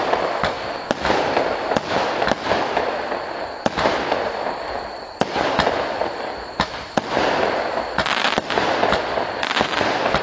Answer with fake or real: real